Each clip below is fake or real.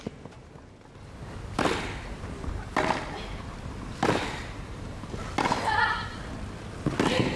real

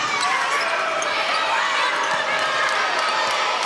real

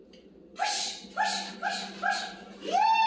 real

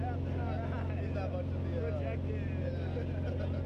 real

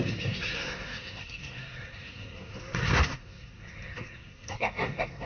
fake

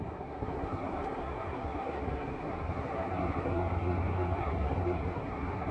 fake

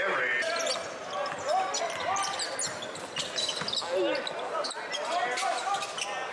real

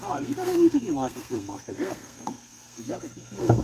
fake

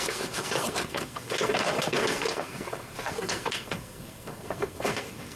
fake